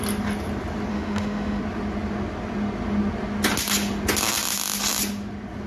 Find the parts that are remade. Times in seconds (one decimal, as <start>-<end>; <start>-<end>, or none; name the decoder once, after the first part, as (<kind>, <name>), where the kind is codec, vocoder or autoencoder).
0.9-1.6 (autoencoder, DAC-VAE)